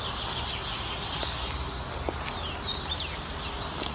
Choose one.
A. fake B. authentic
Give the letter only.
B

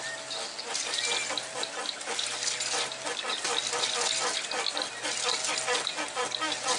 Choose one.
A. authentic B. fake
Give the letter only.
A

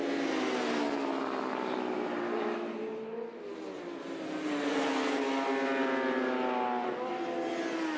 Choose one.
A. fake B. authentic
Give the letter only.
B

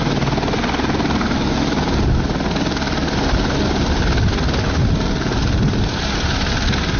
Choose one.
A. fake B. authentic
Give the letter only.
B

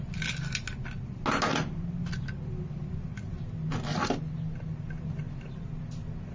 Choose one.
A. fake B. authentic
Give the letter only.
B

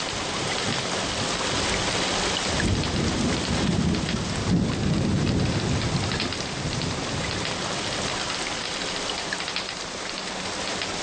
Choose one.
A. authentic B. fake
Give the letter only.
A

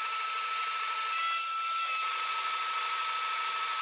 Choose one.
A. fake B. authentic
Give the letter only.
B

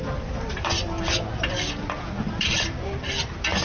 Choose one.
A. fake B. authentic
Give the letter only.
B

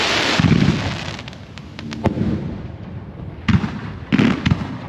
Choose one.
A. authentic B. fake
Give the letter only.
A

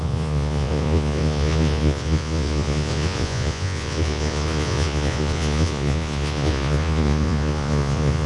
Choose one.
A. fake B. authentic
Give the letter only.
A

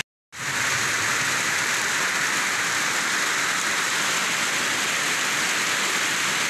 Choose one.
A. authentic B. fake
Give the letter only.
A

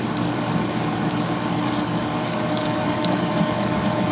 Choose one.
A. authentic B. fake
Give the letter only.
B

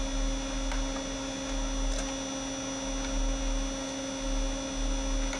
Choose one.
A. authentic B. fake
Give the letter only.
A